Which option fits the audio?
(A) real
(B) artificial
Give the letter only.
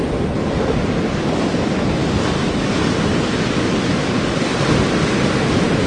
A